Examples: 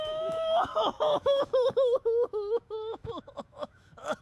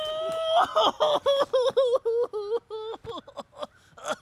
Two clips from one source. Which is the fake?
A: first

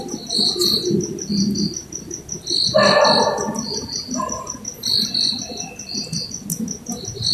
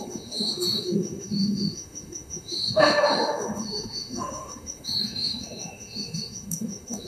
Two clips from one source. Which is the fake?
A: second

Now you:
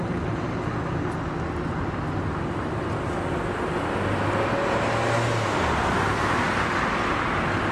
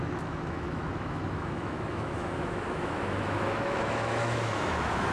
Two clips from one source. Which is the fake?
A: second